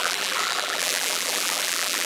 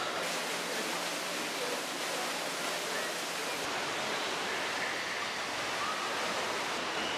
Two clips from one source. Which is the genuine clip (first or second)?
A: second